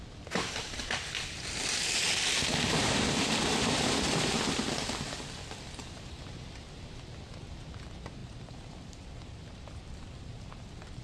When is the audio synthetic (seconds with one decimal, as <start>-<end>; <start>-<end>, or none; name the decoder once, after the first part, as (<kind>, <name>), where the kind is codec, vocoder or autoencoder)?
0.0-11.0 (vocoder, BigVGAN v2)